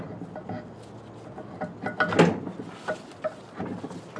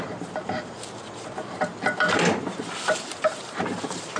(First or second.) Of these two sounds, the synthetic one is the second